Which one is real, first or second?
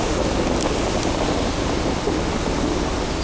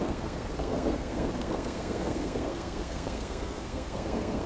first